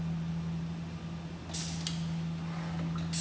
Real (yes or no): yes